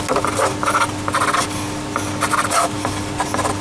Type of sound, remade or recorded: recorded